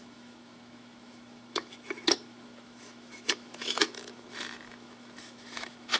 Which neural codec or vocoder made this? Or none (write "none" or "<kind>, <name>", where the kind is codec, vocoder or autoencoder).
autoencoder, DAC-VAE